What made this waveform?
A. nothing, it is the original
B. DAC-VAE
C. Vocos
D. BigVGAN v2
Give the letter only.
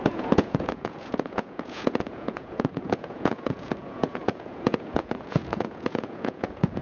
C